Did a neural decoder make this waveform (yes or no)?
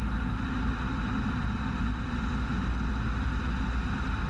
no